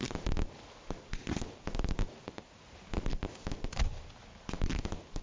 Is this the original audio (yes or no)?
yes